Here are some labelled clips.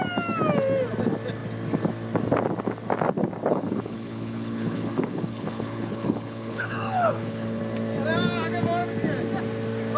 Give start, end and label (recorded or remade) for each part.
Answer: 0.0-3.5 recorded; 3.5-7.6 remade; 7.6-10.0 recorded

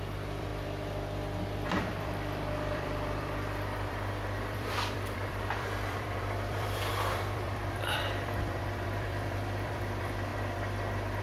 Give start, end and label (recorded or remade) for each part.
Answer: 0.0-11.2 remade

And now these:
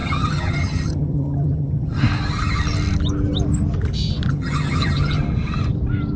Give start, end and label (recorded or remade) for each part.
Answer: 0.0-2.0 remade; 2.0-4.3 recorded; 4.3-5.2 remade; 5.2-6.2 recorded

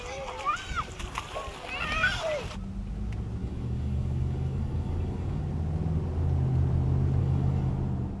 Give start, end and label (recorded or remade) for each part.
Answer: 0.0-3.4 recorded; 3.4-5.4 remade; 5.4-7.2 recorded; 7.2-7.7 remade; 7.7-8.2 recorded

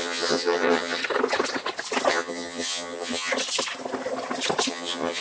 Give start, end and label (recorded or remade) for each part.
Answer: 0.0-1.0 remade; 1.0-2.1 recorded; 2.1-3.3 remade; 3.3-4.7 recorded; 4.7-5.2 remade